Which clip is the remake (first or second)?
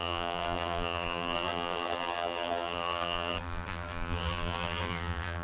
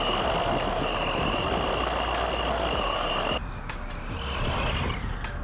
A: first